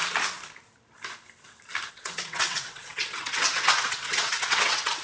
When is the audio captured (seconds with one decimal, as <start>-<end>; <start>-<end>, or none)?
0.0-1.9